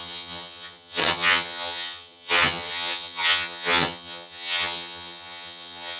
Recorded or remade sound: remade